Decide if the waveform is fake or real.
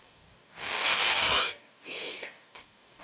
fake